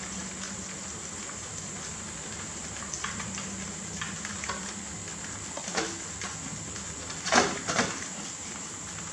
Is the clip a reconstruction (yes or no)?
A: no